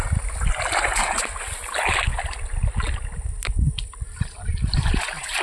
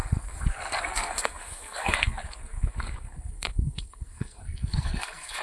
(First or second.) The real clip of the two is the first